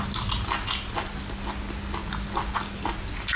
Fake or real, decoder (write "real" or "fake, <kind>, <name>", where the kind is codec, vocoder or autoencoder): real